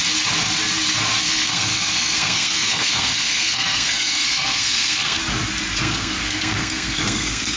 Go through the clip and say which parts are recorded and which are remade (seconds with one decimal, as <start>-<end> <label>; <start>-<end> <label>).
0.0-1.2 recorded; 1.2-5.2 remade; 5.2-5.8 recorded; 5.8-7.6 remade